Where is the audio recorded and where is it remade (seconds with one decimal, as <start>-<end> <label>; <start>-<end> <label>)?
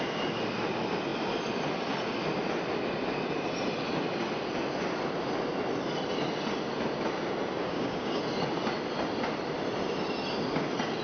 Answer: 0.0-7.6 recorded; 7.6-8.2 remade; 8.2-11.0 recorded